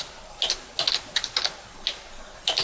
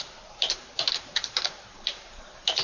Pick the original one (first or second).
first